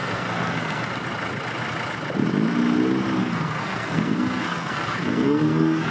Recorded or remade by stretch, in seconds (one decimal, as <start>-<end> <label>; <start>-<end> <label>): 0.0-0.9 remade; 0.9-3.2 recorded; 3.2-5.9 remade